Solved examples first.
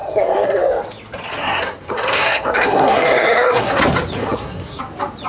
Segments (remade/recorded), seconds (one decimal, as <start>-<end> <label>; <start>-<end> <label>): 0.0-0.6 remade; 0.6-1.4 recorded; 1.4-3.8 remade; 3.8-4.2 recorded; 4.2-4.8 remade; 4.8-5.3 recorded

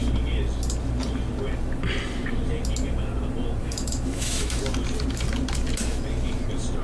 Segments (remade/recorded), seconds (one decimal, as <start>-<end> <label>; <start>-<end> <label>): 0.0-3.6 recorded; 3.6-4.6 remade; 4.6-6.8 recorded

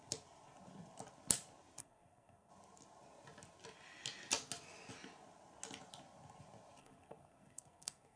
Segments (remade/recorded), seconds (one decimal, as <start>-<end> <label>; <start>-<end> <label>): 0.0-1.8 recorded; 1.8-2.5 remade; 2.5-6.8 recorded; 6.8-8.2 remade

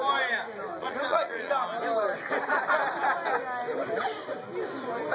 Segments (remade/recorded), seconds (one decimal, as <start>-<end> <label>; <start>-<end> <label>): 0.0-0.8 recorded; 0.8-1.5 remade; 1.5-5.1 recorded

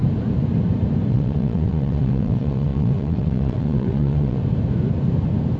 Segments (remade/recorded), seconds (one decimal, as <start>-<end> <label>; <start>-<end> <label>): 0.0-1.1 recorded; 1.1-4.4 remade; 4.4-5.6 recorded

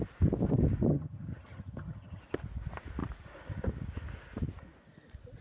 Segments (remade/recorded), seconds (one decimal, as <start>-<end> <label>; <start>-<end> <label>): 0.0-0.9 recorded; 0.9-2.2 remade; 2.2-5.4 recorded

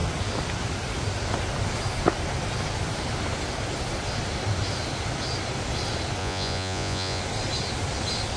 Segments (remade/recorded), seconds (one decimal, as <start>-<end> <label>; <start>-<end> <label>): 0.0-6.2 recorded; 6.2-7.2 remade; 7.2-8.4 recorded